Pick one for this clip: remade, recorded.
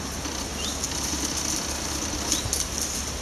recorded